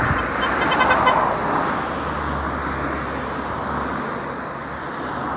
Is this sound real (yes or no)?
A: yes